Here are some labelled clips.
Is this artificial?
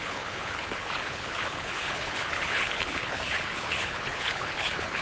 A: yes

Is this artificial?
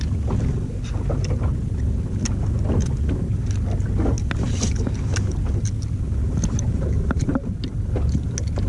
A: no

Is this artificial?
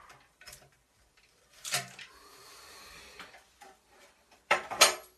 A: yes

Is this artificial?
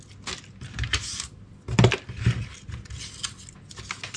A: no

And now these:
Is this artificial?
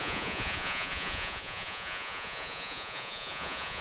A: yes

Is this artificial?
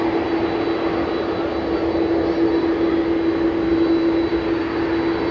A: no